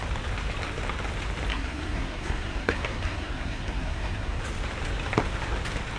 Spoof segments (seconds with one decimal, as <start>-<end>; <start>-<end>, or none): 1.5-4.4